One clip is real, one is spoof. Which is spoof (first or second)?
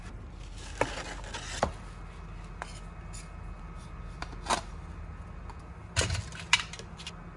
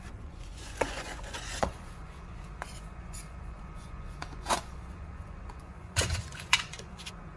second